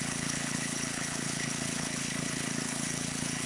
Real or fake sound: fake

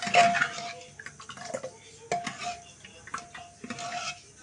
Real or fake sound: real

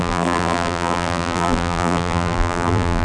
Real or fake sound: fake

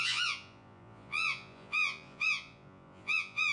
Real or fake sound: fake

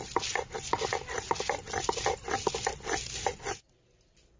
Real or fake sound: real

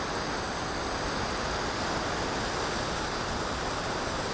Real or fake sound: real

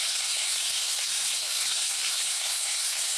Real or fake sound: fake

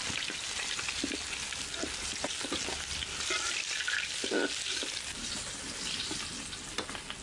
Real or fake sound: real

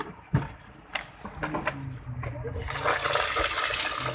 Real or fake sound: real